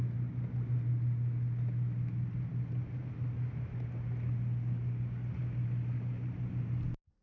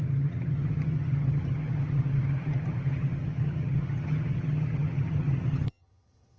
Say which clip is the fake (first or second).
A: second